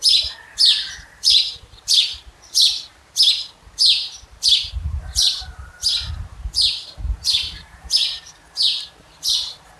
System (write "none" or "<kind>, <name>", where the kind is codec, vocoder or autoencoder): vocoder, BigVGAN v2